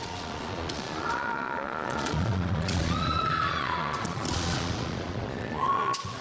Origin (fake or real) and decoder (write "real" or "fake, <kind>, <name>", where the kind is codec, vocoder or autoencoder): fake, vocoder, Vocos